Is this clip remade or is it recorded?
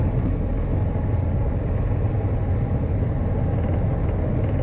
recorded